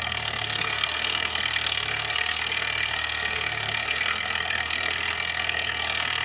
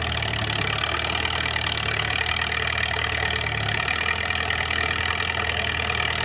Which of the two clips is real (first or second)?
second